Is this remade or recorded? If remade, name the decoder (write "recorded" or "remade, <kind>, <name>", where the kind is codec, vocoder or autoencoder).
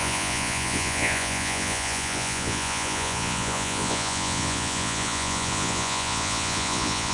remade, vocoder, Vocos